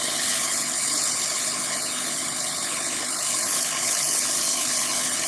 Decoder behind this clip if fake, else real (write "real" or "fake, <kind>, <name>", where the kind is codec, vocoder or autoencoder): fake, codec, HILCodec